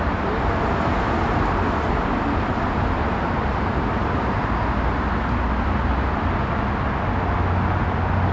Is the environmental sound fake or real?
real